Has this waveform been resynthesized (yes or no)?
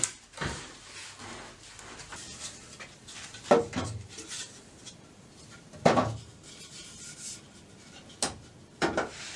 no